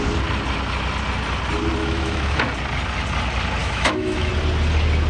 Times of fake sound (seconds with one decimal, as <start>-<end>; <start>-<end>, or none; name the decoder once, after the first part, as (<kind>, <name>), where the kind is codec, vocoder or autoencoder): 1.8-2.4 (autoencoder, DAC-VAE); 3.6-4.3